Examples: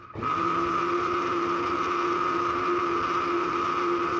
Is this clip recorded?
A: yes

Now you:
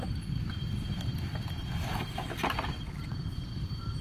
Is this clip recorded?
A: yes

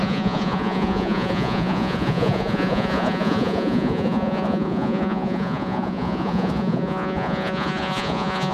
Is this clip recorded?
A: no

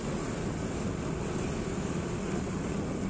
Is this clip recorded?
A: yes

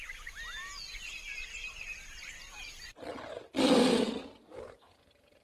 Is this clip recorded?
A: no